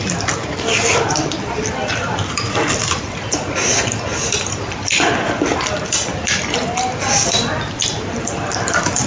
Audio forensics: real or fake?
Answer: fake